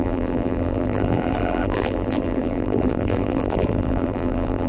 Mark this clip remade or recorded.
remade